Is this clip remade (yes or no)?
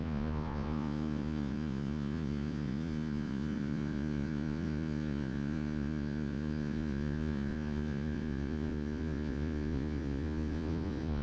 yes